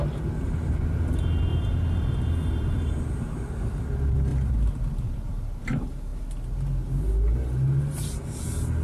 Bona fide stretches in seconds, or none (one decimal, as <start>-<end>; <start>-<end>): 0.0-1.5; 3.8-4.3; 5.6-8.8